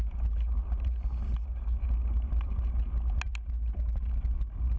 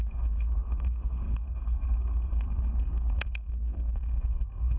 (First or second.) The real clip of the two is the first